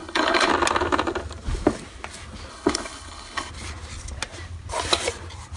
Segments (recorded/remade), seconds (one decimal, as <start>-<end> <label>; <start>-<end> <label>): 0.0-0.5 remade; 0.5-2.5 recorded; 2.5-3.5 remade; 3.5-5.6 recorded